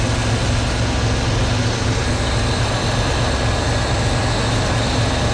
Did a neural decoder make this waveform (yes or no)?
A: no